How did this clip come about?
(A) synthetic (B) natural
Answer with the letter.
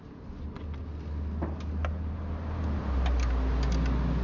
B